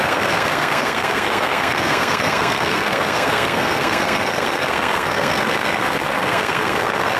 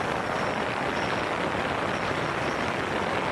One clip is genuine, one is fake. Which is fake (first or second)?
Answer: first